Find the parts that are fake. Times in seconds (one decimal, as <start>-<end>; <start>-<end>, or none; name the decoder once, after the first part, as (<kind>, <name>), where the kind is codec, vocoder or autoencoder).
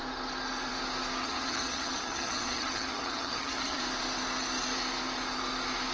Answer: 1.2-3.8 (vocoder, HiFi-GAN)